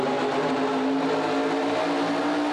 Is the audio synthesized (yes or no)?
no